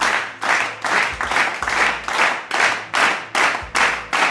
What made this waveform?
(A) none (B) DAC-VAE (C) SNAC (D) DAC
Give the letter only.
A